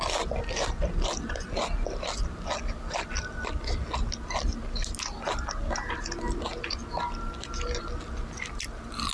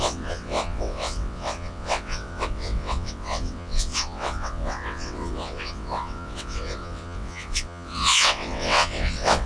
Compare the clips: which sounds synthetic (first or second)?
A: second